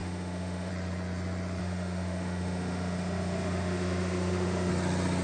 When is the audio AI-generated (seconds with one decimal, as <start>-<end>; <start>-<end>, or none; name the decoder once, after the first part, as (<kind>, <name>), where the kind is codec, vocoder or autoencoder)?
0.0-0.7 (autoencoder, DAC-VAE); 1.6-4.7